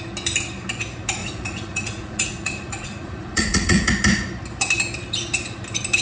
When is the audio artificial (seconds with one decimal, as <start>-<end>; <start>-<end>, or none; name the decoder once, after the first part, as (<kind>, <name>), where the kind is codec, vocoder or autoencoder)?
1.2-3.9 (vocoder, Vocos)